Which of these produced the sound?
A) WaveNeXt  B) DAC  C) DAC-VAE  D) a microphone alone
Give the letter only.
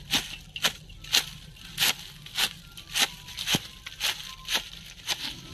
D